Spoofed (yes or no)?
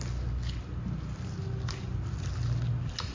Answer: no